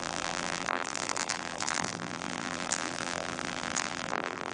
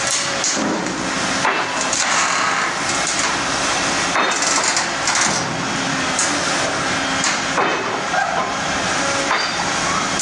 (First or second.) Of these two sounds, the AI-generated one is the first